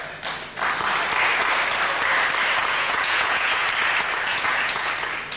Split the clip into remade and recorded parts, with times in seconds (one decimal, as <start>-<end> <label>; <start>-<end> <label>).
0.0-2.6 recorded; 2.6-3.6 remade; 3.6-4.3 recorded; 4.3-4.9 remade; 4.9-5.4 recorded